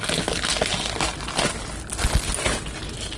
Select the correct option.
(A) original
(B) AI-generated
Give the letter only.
A